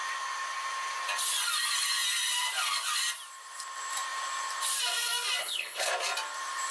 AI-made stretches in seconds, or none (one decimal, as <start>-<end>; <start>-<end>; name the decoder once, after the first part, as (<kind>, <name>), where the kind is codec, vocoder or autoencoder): 5.4-5.9 (codec, HILCodec)